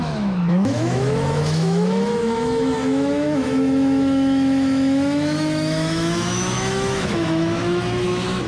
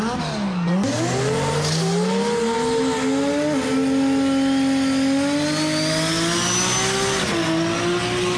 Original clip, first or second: second